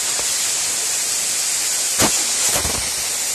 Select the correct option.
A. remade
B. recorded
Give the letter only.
B